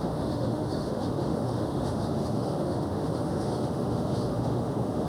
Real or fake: fake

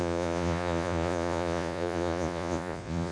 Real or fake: fake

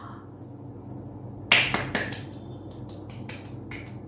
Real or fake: real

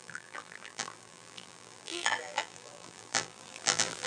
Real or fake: fake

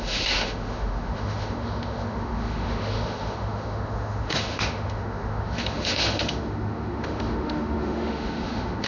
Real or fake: fake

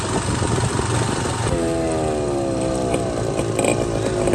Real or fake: real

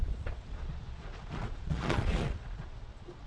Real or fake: fake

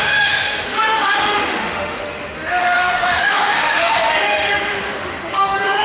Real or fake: fake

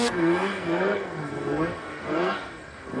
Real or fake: fake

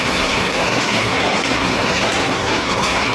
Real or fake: fake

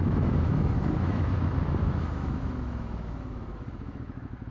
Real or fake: fake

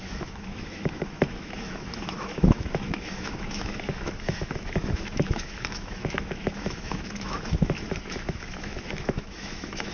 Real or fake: fake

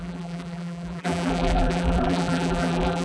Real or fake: fake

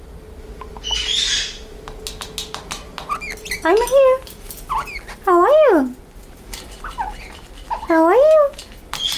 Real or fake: real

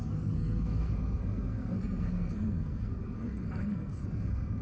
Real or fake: fake